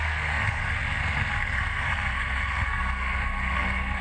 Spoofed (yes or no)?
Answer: yes